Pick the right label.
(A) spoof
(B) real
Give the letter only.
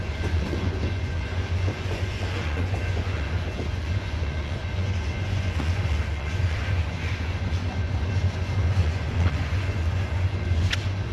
A